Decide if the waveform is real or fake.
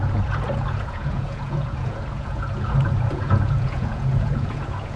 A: fake